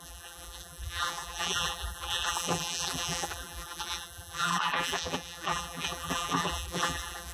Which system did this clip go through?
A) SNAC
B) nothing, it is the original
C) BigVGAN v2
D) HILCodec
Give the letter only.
C